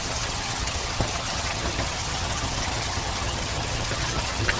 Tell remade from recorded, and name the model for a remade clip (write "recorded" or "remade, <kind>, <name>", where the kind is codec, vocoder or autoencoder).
remade, vocoder, HiFi-GAN